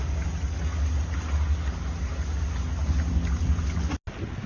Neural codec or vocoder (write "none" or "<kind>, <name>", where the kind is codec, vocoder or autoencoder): none